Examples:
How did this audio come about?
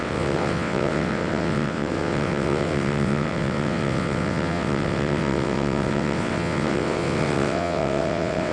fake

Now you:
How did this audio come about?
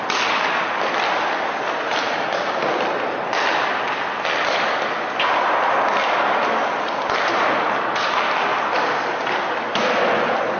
real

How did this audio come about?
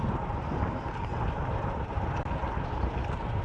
fake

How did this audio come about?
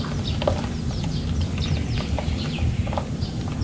real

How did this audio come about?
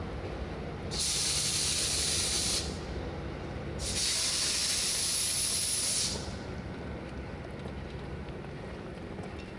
real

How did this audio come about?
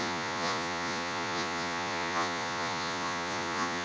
fake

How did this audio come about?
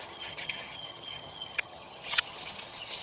fake